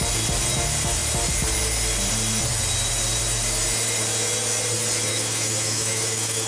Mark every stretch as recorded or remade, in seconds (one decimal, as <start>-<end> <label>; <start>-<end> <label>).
0.0-5.1 recorded; 5.1-6.5 remade